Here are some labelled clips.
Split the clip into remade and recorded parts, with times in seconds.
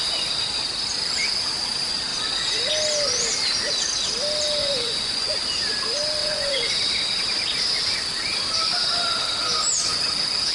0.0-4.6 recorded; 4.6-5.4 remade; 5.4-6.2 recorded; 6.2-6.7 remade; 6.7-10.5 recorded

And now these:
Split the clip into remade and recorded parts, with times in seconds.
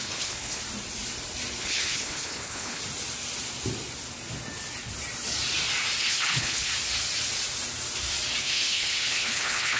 0.0-0.6 remade; 0.6-1.6 recorded; 1.6-2.8 remade; 2.8-6.0 recorded; 6.0-6.7 remade; 6.7-8.4 recorded; 8.4-9.8 remade